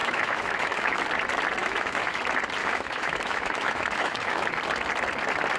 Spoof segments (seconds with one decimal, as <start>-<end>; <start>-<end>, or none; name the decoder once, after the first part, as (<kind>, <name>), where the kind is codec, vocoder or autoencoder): 0.0-1.0 (autoencoder, DAC-VAE); 1.6-2.2; 2.6-4.5